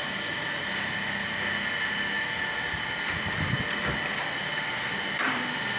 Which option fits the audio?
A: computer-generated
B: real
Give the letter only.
B